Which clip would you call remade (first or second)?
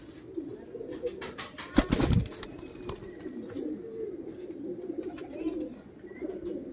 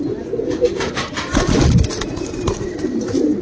second